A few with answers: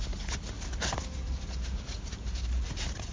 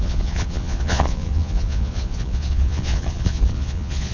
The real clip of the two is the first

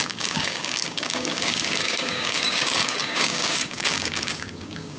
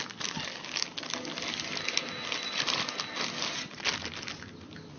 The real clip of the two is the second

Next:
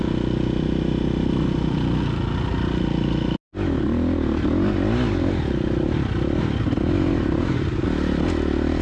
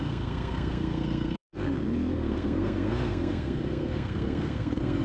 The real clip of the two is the first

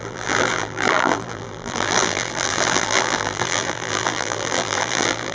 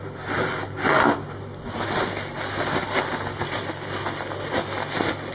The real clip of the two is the second